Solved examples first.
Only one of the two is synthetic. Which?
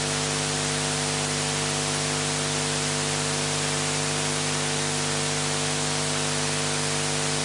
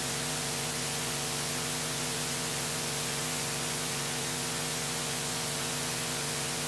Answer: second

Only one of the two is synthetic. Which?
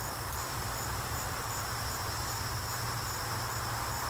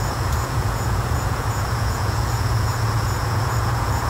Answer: second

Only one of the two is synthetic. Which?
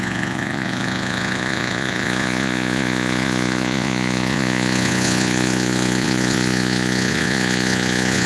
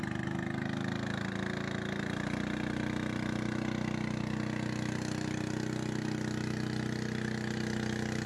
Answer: first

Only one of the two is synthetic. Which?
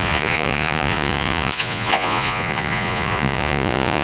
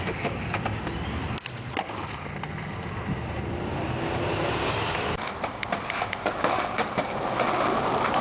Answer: first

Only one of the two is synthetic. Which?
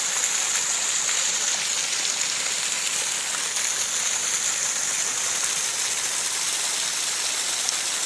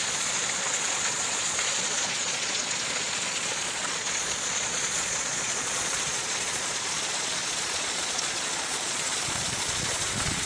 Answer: second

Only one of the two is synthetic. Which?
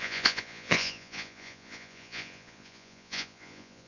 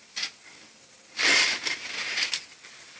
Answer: first